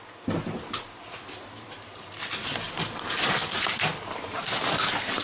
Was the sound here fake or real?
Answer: real